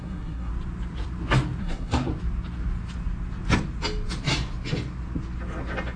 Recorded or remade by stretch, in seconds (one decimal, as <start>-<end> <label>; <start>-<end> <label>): 0.0-0.5 remade; 0.5-1.6 recorded; 1.6-2.1 remade; 2.1-6.0 recorded

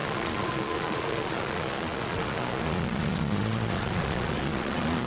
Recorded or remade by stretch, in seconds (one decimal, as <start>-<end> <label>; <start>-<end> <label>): 0.0-5.1 remade